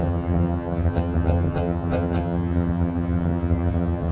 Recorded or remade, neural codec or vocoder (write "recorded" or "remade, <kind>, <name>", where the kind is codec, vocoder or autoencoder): remade, vocoder, HiFi-GAN